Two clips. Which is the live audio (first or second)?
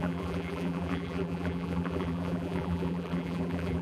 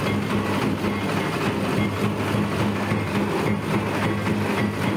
second